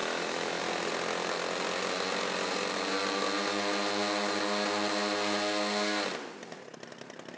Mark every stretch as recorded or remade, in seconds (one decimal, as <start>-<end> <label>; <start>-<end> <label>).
0.0-0.6 remade; 0.6-7.4 recorded